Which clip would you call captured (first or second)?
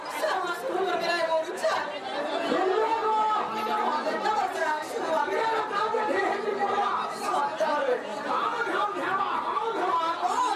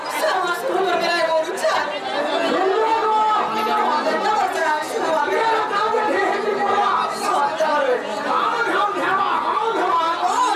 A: second